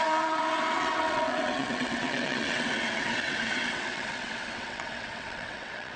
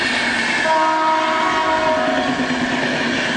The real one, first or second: second